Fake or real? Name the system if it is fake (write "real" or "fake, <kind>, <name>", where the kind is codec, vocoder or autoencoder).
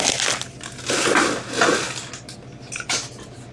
real